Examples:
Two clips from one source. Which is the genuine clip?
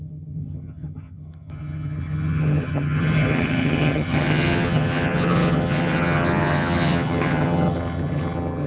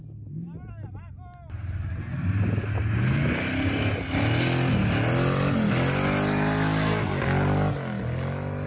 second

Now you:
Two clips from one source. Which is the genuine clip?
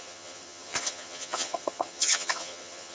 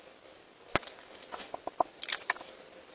second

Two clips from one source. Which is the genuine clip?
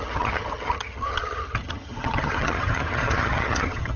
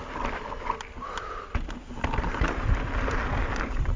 second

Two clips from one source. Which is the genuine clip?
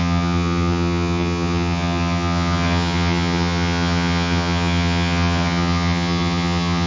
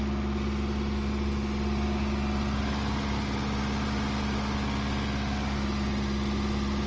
second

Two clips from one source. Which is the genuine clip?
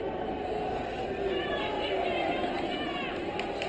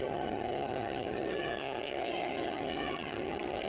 first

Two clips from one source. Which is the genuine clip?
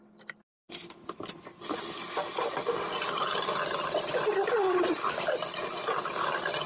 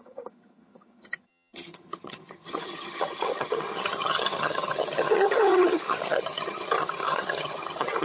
first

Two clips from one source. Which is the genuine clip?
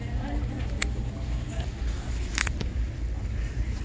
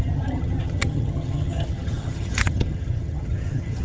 first